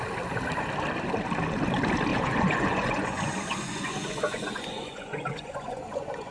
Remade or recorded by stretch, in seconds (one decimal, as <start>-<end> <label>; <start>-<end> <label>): 0.0-2.1 recorded; 2.1-6.3 remade